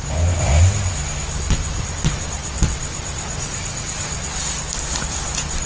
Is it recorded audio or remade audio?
recorded